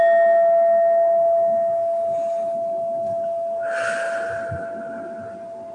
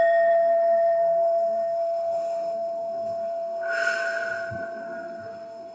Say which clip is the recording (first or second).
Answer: first